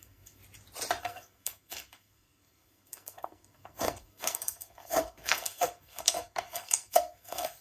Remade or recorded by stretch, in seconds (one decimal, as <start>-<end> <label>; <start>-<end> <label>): 0.0-0.4 remade; 0.4-1.0 recorded; 1.0-7.6 remade